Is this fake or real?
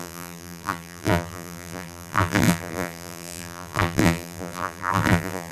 fake